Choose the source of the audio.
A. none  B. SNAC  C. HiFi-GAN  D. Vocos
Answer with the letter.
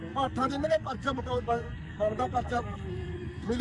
B